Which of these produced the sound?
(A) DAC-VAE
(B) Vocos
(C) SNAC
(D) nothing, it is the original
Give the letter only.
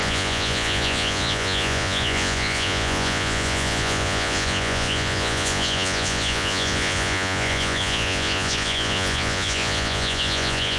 B